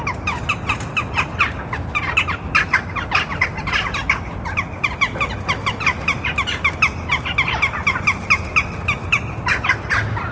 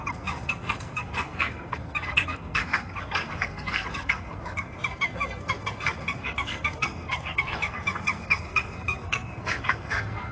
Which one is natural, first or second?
first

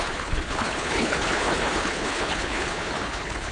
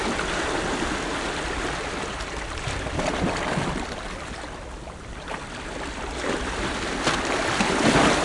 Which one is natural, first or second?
second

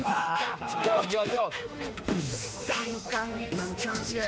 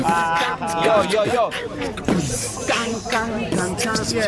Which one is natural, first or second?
second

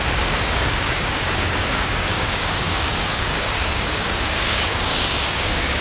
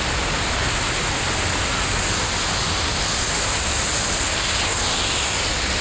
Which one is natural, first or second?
second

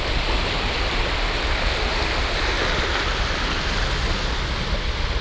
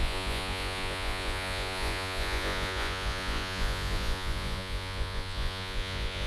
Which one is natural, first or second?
first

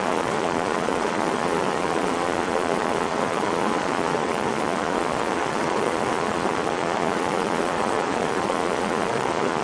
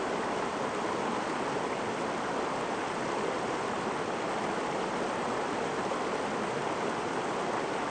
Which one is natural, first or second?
second